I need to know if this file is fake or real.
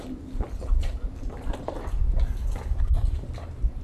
real